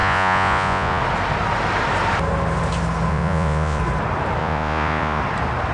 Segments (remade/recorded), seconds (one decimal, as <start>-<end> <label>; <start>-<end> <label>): 0.0-1.0 remade; 1.0-3.1 recorded; 3.1-3.8 remade; 3.8-4.4 recorded; 4.4-5.2 remade; 5.2-5.7 recorded